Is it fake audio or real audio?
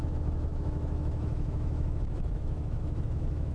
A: fake